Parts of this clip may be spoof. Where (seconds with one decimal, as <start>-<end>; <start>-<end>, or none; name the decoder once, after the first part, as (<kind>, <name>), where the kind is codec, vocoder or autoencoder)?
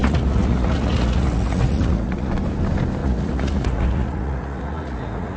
0.0-2.3 (vocoder, Vocos); 3.0-5.4